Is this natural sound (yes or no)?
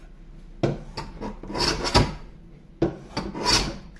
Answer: yes